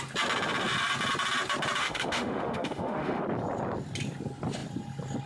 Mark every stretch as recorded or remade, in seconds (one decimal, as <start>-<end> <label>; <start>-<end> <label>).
0.0-1.8 recorded; 1.8-3.2 remade; 3.2-5.3 recorded